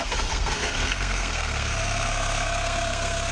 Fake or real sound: fake